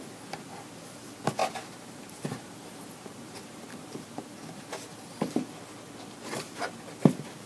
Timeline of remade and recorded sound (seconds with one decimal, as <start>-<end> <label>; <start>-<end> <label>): 0.0-1.4 recorded; 1.4-4.6 remade; 4.6-7.5 recorded